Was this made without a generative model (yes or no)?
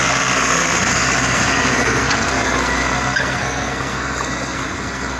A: no